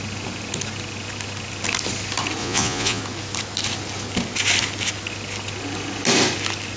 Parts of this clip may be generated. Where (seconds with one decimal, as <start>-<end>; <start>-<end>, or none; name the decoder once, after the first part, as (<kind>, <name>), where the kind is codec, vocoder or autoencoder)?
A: 2.4-3.0 (vocoder, Vocos)